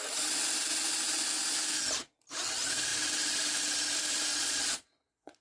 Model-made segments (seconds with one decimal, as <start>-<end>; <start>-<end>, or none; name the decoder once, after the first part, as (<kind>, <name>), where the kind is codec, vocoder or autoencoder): 4.3-5.4 (vocoder, Vocos)